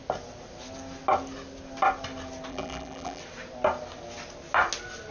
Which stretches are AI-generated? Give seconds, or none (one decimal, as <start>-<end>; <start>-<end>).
2.5-3.2